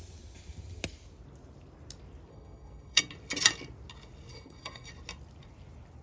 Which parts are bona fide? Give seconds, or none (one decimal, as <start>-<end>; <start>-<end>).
0.0-2.3; 3.0-4.3; 4.9-6.0